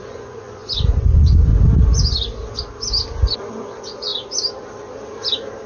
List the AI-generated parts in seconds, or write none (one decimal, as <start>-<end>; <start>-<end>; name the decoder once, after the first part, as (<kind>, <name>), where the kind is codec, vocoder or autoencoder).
0.0-1.5 (vocoder, Vocos); 3.5-4.1